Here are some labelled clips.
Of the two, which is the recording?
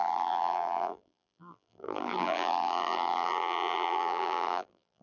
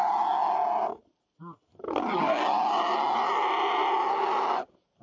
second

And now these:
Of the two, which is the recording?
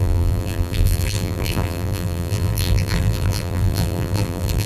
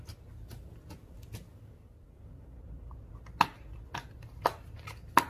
second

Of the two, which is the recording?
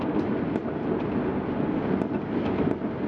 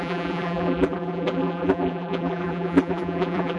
first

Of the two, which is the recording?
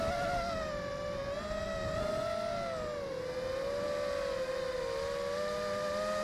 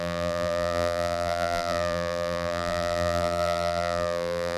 first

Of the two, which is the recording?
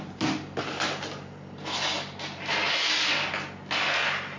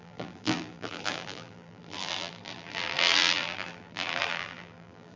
first